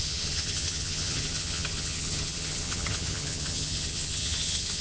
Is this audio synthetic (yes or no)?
yes